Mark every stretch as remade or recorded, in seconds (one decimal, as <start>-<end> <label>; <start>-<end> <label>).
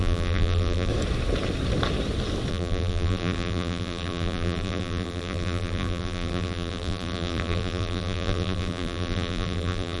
0.0-0.9 remade; 0.9-2.5 recorded; 2.5-10.0 remade